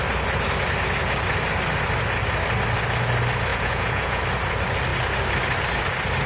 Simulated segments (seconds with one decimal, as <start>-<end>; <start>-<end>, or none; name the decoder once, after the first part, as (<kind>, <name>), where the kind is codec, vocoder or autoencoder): 3.5-4.2 (vocoder, Vocos)